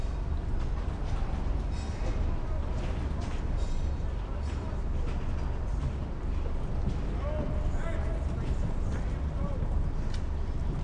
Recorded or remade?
recorded